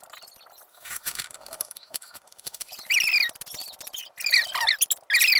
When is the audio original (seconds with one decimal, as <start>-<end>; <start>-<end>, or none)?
0.0-0.7; 2.7-5.4